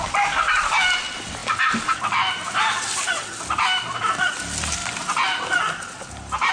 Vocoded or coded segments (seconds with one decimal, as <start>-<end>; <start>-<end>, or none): none